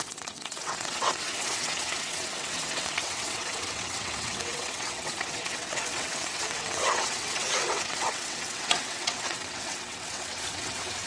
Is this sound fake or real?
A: fake